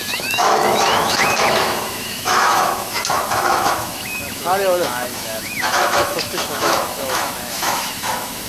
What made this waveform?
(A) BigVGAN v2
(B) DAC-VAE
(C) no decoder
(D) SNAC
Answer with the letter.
B